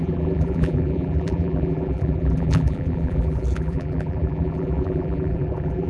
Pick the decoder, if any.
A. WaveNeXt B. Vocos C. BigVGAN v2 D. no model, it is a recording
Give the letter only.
C